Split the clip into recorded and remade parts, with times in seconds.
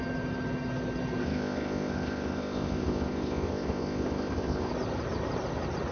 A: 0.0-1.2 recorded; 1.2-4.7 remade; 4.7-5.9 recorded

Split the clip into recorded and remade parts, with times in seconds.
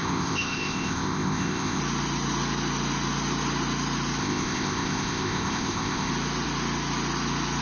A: 0.0-1.8 remade; 1.8-4.2 recorded; 4.2-6.1 remade; 6.1-7.6 recorded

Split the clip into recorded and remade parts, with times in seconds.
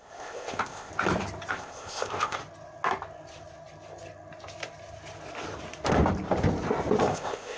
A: 0.0-0.9 remade; 0.9-1.5 recorded; 1.5-2.4 remade; 2.4-7.0 recorded; 7.0-7.6 remade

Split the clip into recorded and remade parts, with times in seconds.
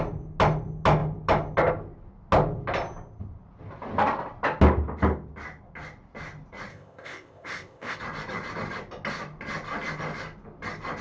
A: 0.0-6.7 recorded; 6.7-8.0 remade; 8.0-11.0 recorded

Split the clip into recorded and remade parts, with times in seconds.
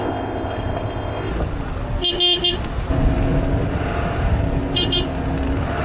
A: 0.0-1.3 remade; 1.3-5.8 recorded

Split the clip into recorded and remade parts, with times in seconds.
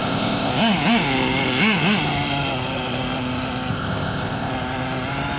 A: 0.0-0.5 remade; 0.5-3.7 recorded; 3.7-4.5 remade; 4.5-5.4 recorded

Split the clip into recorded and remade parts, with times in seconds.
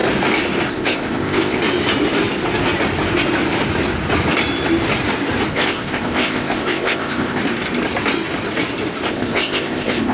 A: 0.0-0.7 recorded; 0.7-1.6 remade; 1.6-5.5 recorded; 5.5-7.4 remade; 7.4-9.1 recorded; 9.1-10.1 remade